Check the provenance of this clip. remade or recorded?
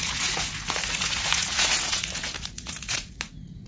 remade